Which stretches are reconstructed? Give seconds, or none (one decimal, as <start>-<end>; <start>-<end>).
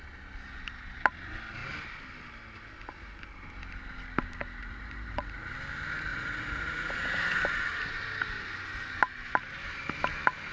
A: 4.6-5.5; 6.1-7.4